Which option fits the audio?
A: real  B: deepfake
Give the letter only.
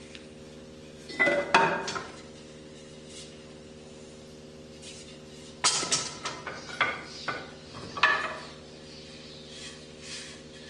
A